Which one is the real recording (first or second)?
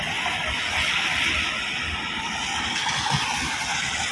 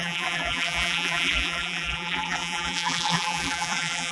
first